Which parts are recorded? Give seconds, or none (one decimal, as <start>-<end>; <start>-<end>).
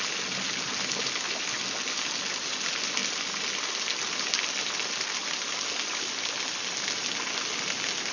0.0-8.1